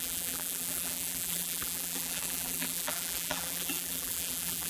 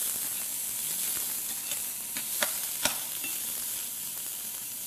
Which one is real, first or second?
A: second